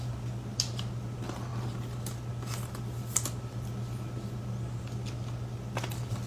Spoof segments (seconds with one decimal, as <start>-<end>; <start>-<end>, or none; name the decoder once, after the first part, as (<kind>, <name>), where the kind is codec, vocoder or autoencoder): none